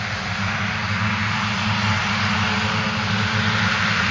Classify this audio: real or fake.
real